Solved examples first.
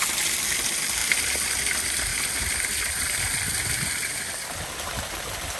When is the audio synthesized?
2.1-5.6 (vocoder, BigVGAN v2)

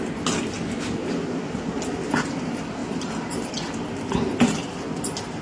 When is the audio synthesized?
2.8-3.5 (vocoder, BigVGAN v2)